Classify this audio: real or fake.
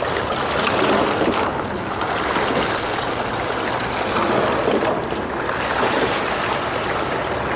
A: real